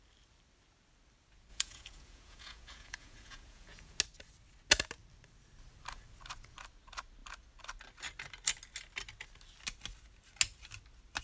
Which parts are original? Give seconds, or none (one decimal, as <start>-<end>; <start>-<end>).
0.0-1.5; 4.0-11.2